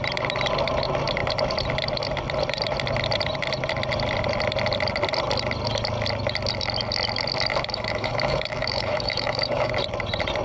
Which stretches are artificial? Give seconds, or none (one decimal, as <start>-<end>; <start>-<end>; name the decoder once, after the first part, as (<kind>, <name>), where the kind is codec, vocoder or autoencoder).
7.5-9.7 (autoencoder, DAC-VAE)